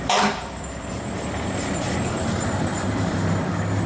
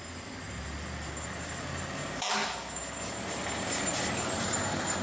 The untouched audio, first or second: second